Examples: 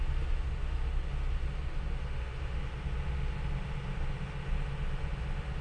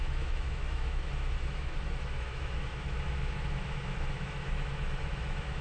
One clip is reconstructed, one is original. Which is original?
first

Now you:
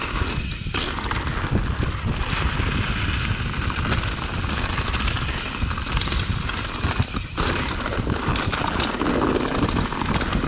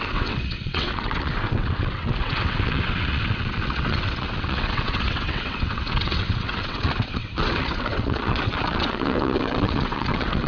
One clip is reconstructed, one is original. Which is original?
first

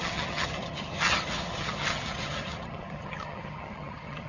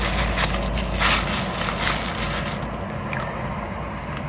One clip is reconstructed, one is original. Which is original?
second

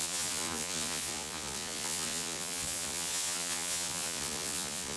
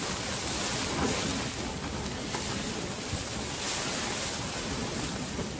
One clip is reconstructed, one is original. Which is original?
second